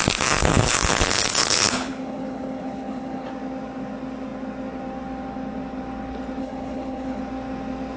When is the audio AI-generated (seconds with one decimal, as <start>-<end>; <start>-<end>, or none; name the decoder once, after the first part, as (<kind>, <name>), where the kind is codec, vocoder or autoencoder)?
0.5-3.3 (codec, HILCodec); 6.4-7.2